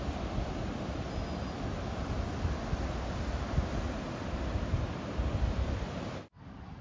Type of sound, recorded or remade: recorded